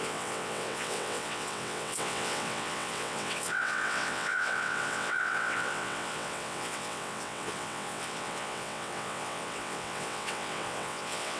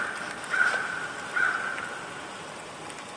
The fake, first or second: first